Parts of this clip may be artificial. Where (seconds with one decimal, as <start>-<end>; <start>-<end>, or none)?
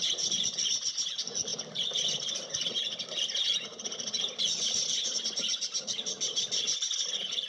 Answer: none